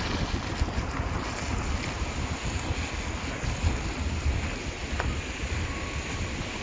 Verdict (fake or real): real